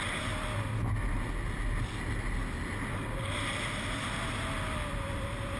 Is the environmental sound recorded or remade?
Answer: recorded